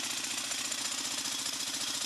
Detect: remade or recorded recorded